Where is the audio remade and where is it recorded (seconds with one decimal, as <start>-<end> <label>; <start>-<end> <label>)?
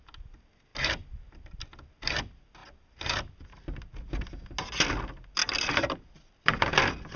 0.0-7.2 recorded